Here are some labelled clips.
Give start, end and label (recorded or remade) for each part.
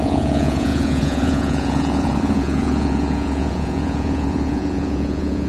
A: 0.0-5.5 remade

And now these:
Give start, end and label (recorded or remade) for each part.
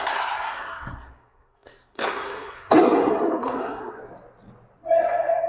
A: 0.0-4.1 remade; 4.1-5.5 recorded